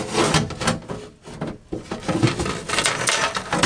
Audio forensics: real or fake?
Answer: real